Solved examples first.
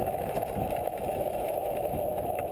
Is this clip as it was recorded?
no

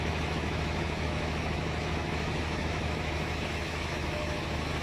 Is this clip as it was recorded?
no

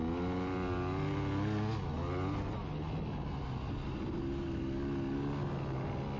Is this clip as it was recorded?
yes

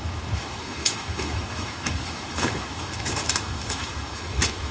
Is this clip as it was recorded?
no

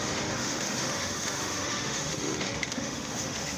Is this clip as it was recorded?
no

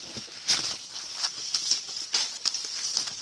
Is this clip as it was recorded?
yes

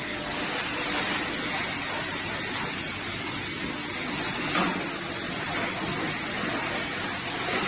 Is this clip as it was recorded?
yes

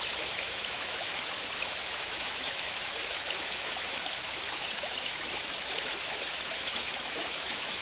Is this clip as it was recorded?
no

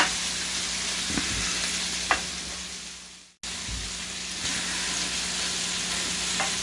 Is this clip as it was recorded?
yes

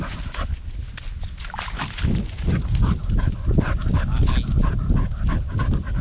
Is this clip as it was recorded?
yes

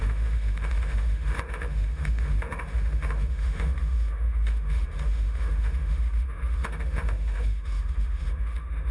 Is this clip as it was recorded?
no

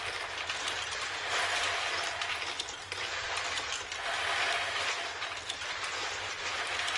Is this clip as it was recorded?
yes